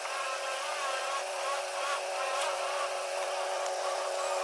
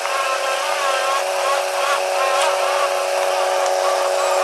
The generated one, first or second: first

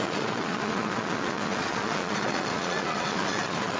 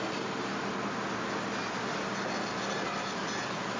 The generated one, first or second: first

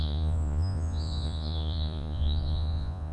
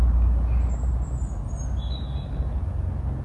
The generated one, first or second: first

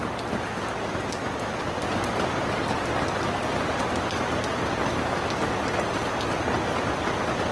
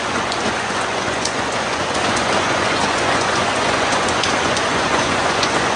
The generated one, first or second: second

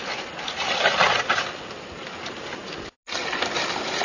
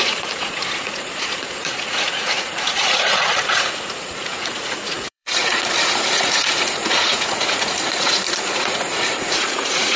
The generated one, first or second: second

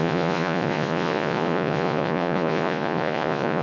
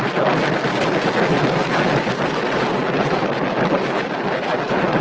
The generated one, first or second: first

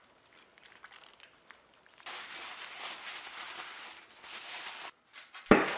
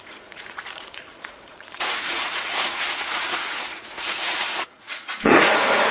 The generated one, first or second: second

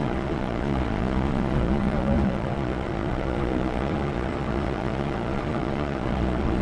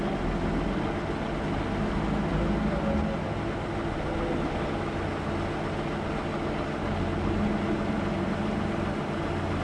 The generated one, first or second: first